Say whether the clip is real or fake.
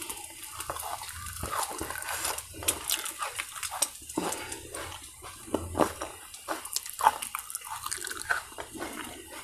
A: real